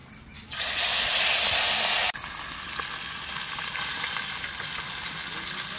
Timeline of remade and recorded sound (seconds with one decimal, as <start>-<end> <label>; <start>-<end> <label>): 0.0-5.8 recorded